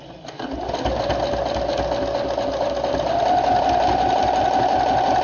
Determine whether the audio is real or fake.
real